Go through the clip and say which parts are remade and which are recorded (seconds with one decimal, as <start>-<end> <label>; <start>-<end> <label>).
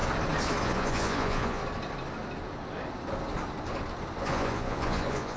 0.0-0.6 recorded; 0.6-1.6 remade; 1.6-4.2 recorded; 4.2-5.4 remade